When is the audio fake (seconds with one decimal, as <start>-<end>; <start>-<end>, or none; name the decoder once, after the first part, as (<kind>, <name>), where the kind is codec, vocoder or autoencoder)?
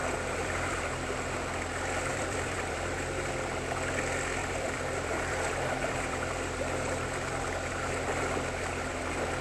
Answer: 0.0-0.9 (vocoder, BigVGAN v2); 2.1-3.3; 4.4-7.9